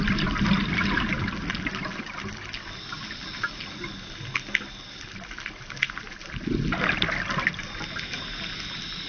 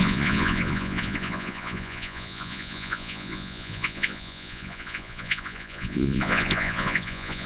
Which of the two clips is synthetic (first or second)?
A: second